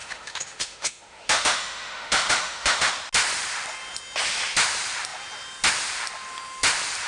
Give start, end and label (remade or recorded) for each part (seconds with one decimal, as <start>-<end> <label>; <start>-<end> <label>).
0.0-2.9 remade; 2.9-7.1 recorded